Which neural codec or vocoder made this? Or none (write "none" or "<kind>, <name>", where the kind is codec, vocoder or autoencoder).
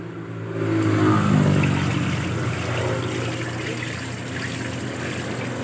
none